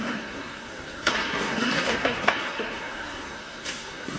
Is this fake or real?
fake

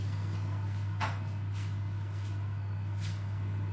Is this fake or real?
fake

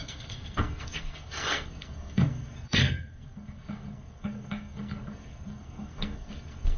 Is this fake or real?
fake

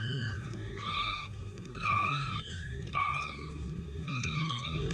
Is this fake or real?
fake